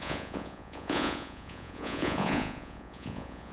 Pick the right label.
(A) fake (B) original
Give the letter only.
A